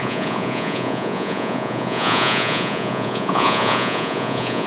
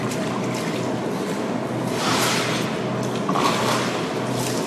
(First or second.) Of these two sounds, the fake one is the first